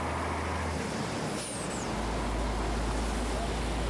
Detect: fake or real real